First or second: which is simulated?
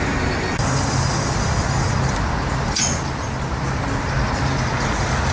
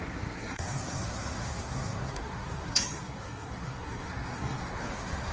second